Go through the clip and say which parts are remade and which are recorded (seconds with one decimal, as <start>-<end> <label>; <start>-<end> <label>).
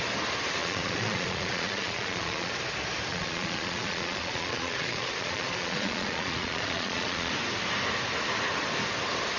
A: 0.0-0.6 recorded; 0.6-2.5 remade; 2.5-3.1 recorded; 3.1-7.3 remade; 7.3-9.4 recorded